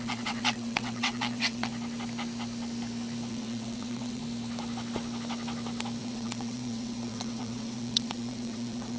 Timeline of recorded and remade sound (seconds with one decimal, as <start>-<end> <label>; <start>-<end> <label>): 0.0-1.7 remade; 1.7-3.3 recorded; 3.3-4.2 remade; 4.2-6.0 recorded; 6.0-9.0 remade